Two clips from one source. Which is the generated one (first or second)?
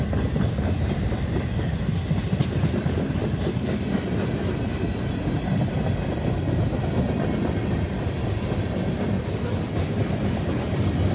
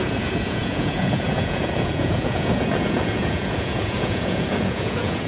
second